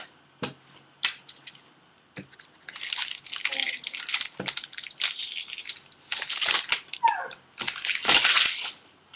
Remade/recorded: recorded